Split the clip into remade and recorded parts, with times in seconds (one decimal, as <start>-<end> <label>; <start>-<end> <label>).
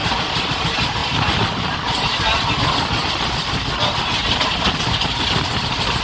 0.0-0.6 remade; 0.6-1.0 recorded; 1.0-2.6 remade; 2.6-4.2 recorded; 4.2-6.0 remade